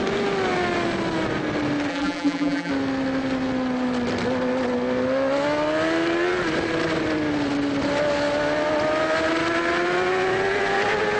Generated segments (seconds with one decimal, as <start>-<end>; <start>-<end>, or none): 1.9-2.7